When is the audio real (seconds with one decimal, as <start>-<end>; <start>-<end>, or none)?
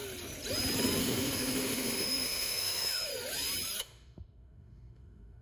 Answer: 0.0-1.0; 3.1-3.8